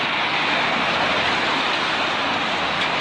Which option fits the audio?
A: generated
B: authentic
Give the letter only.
B